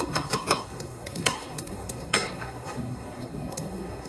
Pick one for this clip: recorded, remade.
remade